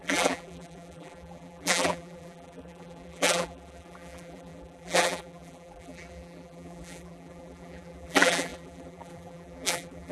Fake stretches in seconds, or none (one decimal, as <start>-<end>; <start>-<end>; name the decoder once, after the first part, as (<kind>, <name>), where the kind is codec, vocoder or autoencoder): 0.0-10.1 (vocoder, BigVGAN v2)